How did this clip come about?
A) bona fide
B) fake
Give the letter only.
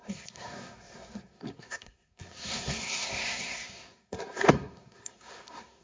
B